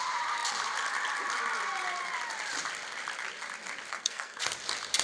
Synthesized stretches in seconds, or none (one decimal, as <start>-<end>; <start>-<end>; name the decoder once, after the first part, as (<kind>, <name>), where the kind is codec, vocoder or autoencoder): 3.9-4.4 (codec, SNAC)